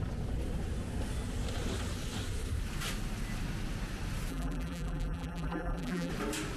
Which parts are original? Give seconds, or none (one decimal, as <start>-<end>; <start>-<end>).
0.0-4.3; 6.1-6.6